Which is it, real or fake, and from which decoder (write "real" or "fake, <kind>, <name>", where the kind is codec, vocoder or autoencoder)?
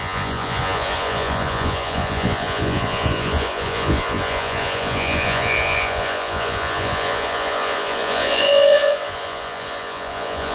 fake, vocoder, Vocos